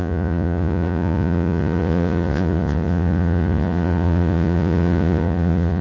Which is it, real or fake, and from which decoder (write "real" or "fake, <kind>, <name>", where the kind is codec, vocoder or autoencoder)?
fake, vocoder, Vocos